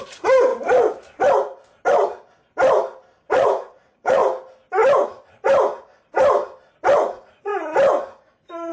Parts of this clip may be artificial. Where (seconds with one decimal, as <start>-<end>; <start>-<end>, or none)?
0.0-0.5; 3.3-4.2; 6.9-7.5